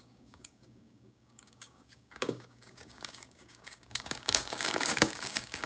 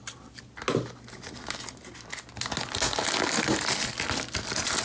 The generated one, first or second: first